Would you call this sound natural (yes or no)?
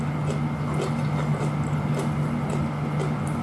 yes